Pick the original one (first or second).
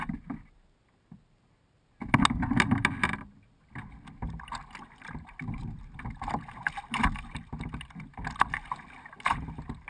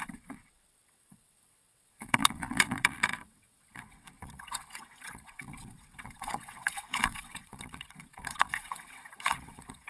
first